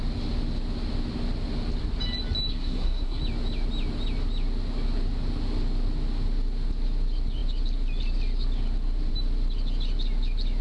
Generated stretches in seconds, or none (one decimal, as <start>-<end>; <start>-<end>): 2.5-3.2